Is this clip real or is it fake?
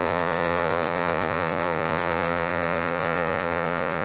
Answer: fake